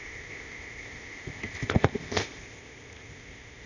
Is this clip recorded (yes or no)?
no